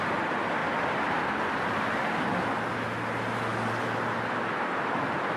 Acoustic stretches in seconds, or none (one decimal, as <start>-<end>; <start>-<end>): 0.0-5.4